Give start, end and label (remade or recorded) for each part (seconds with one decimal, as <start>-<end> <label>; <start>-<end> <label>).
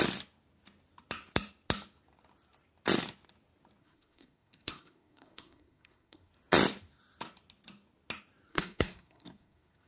0.0-3.8 recorded; 3.8-6.3 remade; 6.3-8.5 recorded; 8.5-9.9 remade